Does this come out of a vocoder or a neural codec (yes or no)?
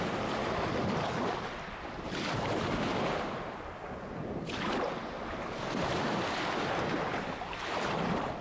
no